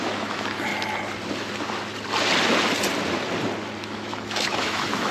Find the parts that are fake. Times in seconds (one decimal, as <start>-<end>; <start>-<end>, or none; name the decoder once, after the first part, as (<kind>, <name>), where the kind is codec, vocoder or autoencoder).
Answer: 0.0-0.7 (autoencoder, DAC-VAE); 3.8-5.1